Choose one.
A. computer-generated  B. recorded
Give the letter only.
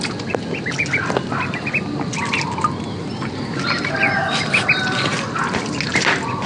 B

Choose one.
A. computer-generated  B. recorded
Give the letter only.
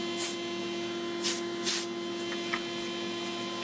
B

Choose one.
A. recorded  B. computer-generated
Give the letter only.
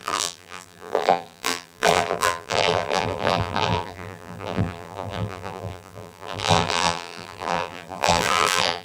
B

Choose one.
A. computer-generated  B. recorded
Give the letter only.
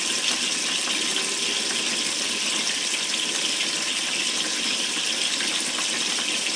B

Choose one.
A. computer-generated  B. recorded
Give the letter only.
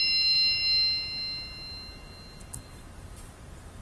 B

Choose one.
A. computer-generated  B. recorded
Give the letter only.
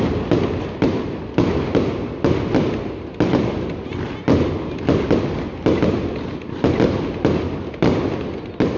B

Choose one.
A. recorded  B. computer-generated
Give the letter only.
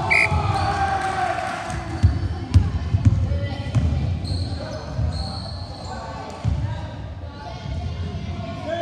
A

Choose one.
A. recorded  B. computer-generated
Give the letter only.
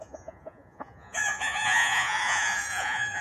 B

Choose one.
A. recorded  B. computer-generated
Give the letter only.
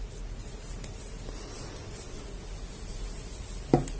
A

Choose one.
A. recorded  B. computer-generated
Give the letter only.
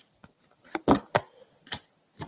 A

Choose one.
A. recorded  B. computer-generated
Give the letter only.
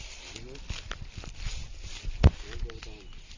A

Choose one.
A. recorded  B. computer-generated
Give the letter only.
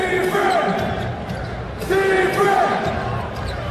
A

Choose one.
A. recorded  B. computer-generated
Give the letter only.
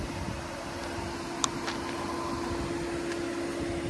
A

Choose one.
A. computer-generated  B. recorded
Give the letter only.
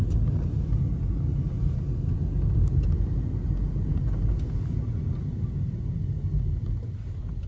B